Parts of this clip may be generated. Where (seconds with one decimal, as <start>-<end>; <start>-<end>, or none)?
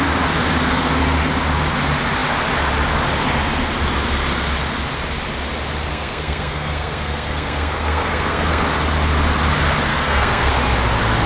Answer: 5.9-8.6; 9.9-10.5